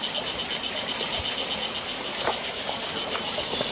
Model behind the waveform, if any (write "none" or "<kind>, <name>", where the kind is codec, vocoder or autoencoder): none